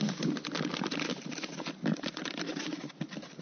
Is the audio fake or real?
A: real